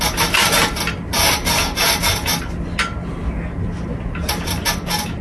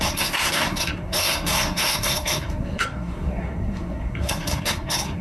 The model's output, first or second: second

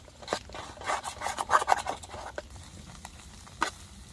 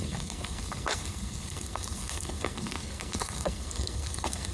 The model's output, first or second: second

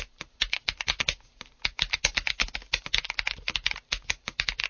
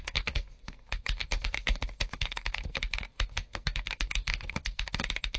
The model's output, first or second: second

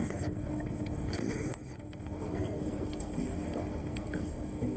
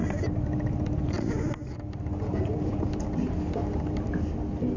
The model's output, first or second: first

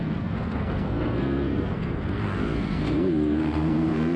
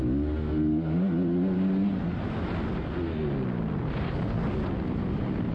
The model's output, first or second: first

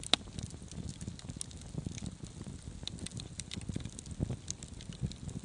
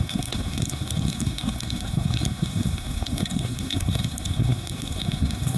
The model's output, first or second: second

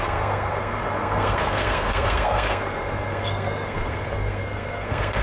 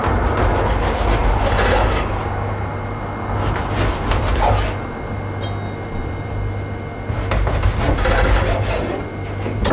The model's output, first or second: first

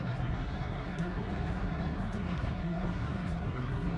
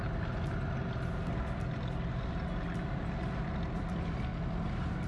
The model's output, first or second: first